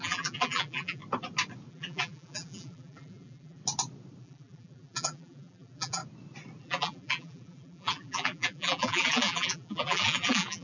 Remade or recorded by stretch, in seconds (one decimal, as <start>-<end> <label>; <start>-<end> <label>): 0.0-1.0 remade; 1.0-1.7 recorded; 1.7-3.6 remade; 3.6-4.2 recorded; 4.2-6.0 remade; 6.0-6.6 recorded; 6.6-10.6 remade